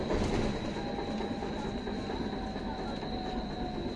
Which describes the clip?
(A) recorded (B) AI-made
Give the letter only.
A